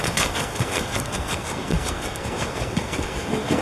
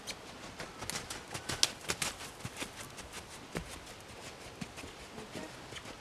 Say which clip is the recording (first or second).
second